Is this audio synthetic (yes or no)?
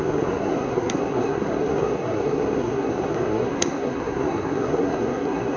yes